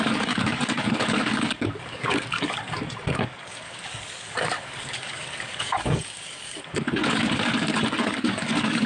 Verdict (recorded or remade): remade